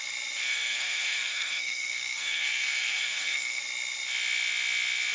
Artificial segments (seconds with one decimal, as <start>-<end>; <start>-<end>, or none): 0.5-3.6